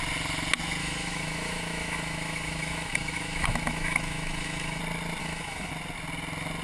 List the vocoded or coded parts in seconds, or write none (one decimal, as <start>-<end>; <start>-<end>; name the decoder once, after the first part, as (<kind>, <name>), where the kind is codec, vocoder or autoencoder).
0.8-4.8 (autoencoder, DAC-VAE); 5.2-5.7

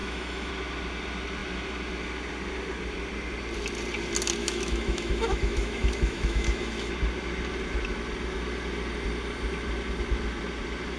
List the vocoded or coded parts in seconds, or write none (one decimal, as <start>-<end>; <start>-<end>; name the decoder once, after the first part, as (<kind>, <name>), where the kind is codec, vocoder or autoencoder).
0.0-0.5 (autoencoder, DAC-VAE); 4.4-6.9

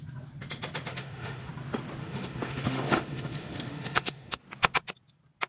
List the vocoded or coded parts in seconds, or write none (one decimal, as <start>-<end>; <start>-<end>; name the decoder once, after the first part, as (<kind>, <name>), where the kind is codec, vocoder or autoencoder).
0.9-1.5 (autoencoder, DAC-VAE); 2.0-4.4

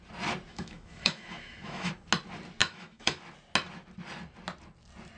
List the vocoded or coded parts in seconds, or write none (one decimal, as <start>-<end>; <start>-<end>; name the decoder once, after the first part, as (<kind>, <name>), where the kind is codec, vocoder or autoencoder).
0.5-1.9 (autoencoder, DAC-VAE); 2.6-3.2

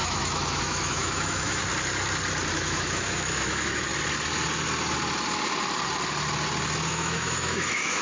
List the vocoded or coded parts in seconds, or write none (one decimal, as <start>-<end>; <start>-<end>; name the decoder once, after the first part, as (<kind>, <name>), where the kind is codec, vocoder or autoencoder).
0.0-1.6 (autoencoder, DAC-VAE); 2.5-3.9; 6.9-8.0

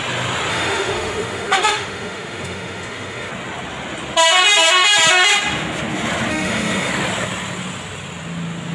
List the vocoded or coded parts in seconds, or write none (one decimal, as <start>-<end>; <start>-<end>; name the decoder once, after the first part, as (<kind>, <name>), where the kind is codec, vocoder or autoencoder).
0.5-3.3 (autoencoder, DAC-VAE); 6.3-6.9

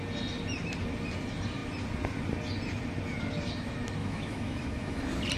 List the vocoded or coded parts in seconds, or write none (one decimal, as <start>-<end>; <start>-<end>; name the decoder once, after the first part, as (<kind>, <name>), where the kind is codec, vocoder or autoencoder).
4.0-5.0 (autoencoder, DAC-VAE)

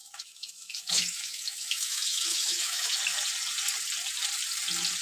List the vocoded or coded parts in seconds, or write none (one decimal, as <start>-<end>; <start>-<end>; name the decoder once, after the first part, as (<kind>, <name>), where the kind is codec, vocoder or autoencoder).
0.0-3.0 (autoencoder, DAC-VAE)